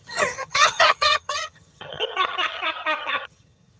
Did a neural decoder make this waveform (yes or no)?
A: yes